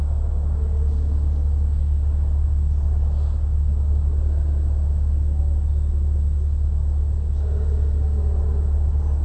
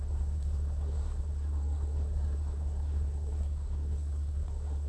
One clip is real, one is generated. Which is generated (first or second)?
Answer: second